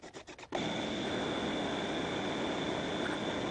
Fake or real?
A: real